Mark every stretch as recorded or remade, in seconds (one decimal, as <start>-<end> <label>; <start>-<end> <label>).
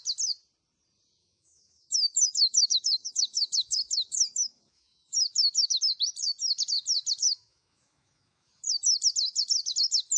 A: 0.0-1.2 recorded; 1.2-5.8 remade; 5.8-7.2 recorded; 7.2-9.0 remade; 9.0-10.2 recorded